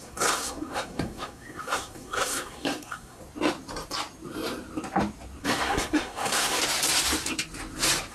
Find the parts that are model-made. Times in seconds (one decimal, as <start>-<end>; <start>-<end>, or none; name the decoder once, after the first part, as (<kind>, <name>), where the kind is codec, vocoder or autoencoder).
0.0-3.2 (codec, SNAC); 5.4-6.6